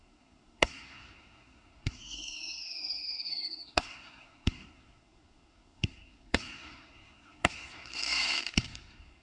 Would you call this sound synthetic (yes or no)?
yes